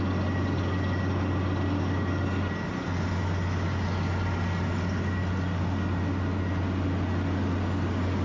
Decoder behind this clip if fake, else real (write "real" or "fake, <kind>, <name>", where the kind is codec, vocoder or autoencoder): real